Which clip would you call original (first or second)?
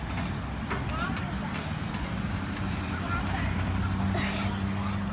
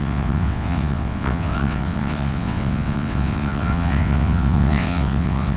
first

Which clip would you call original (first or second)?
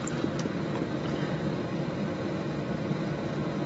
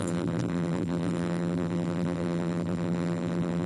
first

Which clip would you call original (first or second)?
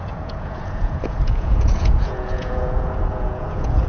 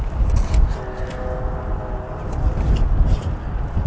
second